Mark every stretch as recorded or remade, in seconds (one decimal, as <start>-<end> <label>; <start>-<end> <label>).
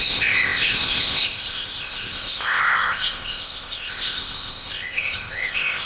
0.0-5.9 remade